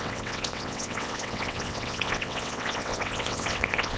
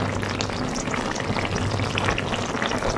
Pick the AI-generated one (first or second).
first